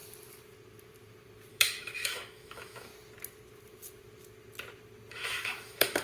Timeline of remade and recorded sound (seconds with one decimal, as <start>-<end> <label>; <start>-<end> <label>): 0.0-1.5 recorded; 1.5-2.9 remade; 2.9-5.1 recorded; 5.1-6.0 remade